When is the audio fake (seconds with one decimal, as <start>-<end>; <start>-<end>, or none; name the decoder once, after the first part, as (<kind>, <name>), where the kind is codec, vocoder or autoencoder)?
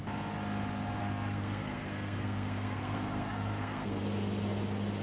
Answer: 1.0-4.0 (codec, SNAC)